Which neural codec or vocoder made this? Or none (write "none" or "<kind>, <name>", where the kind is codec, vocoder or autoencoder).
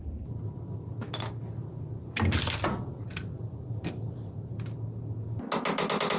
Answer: none